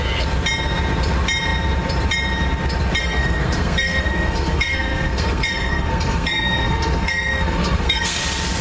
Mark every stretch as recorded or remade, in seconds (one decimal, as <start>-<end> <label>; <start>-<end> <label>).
0.0-3.0 recorded; 3.0-8.2 remade; 8.2-8.6 recorded